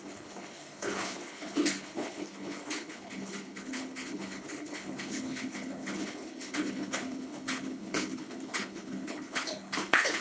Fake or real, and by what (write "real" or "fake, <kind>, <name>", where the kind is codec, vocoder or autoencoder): fake, codec, HILCodec